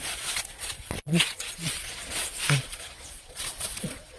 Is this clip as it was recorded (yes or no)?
no